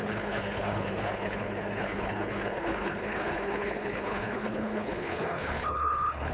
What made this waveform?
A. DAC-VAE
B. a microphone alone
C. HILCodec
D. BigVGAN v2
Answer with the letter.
C